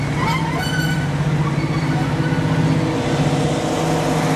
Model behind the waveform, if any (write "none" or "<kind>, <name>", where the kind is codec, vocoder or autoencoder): none